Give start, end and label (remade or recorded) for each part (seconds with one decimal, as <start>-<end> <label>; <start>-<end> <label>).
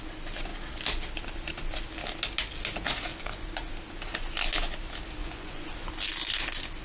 0.0-3.1 recorded; 3.1-3.7 remade; 3.7-5.2 recorded; 5.2-5.9 remade; 5.9-6.8 recorded